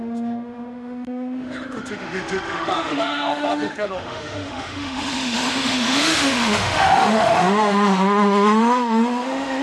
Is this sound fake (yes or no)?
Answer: yes